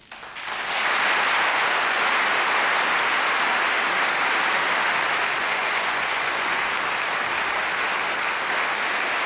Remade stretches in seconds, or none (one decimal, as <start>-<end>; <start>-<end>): 1.5-2.0; 5.4-6.6